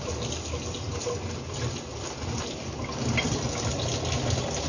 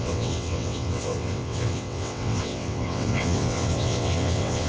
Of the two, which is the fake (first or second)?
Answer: second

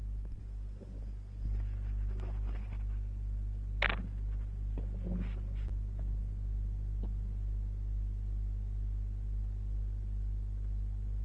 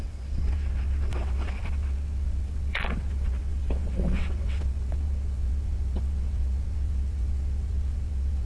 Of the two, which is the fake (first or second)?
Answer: second